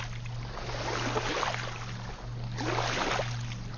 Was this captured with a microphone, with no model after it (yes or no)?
yes